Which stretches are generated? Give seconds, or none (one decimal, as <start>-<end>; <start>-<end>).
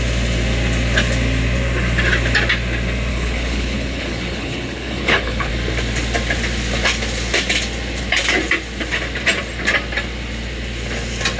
3.1-5.5